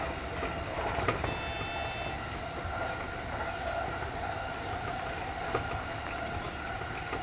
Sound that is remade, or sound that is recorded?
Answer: recorded